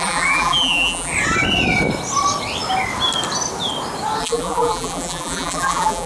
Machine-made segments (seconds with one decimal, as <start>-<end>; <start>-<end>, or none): 0.0-1.1; 4.2-6.1